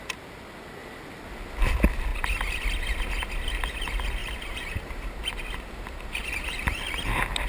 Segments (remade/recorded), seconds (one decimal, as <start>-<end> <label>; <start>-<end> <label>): 0.0-2.1 recorded; 2.1-2.7 remade; 2.7-4.2 recorded; 4.2-6.4 remade; 6.4-7.5 recorded